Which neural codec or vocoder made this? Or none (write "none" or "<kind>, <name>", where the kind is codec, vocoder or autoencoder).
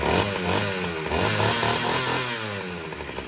none